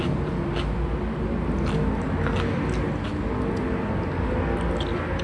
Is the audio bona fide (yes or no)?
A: yes